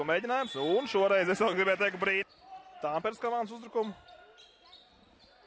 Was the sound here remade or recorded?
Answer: recorded